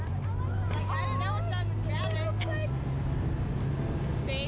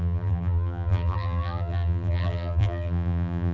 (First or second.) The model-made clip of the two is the second